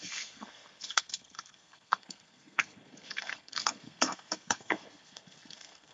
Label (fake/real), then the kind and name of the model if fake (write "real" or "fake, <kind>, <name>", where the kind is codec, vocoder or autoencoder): fake, codec, SNAC